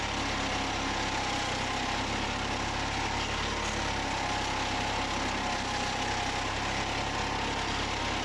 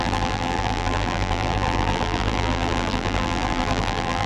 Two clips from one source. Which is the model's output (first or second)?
second